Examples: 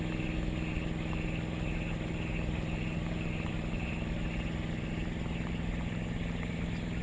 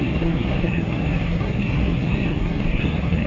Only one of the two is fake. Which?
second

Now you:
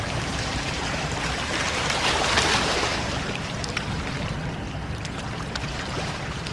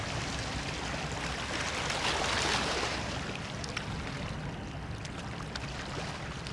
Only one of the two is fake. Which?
first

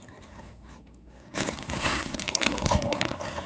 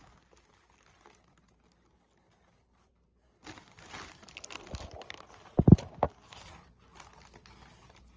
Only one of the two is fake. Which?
first